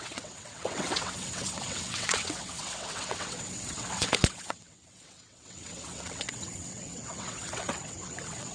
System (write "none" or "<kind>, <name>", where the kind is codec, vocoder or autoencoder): vocoder, WaveNeXt